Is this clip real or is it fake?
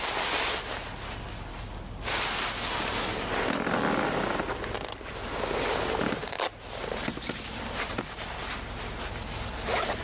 real